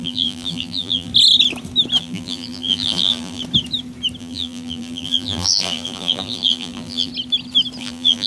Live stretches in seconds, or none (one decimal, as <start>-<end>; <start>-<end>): 1.1-2.0; 3.4-4.2; 7.1-7.8